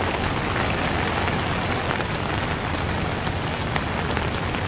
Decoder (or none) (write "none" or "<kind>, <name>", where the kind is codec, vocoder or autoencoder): none